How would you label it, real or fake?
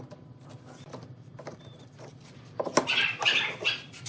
real